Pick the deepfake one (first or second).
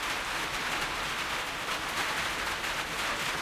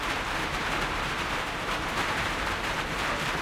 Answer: second